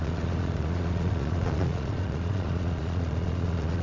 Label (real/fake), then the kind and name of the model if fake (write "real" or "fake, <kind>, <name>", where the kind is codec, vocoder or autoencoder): fake, vocoder, Vocos